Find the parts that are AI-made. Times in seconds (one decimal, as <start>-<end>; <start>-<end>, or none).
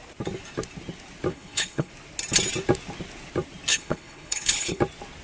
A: 1.3-1.9; 3.7-4.8